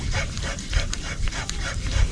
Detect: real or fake real